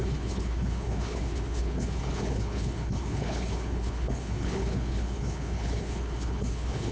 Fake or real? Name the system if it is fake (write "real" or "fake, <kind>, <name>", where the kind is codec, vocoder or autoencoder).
fake, codec, HILCodec